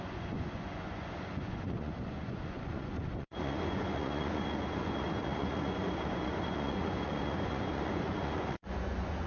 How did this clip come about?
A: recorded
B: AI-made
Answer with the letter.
B